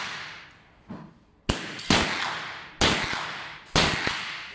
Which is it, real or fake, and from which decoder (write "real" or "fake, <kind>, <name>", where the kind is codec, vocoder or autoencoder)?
real